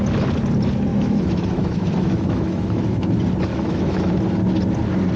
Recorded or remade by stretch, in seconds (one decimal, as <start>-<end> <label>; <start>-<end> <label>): 0.0-0.9 recorded; 0.9-3.0 remade; 3.0-3.5 recorded; 3.5-4.1 remade; 4.1-5.2 recorded